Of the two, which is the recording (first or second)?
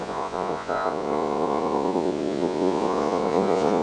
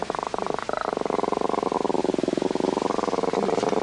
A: second